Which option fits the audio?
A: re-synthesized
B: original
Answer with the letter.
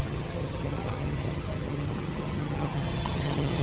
A